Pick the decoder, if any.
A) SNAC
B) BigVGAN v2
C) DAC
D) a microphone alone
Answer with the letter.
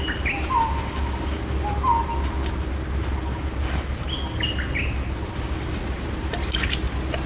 D